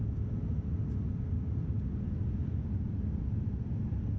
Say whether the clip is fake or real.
real